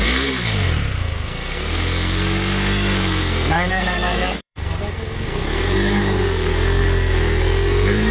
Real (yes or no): no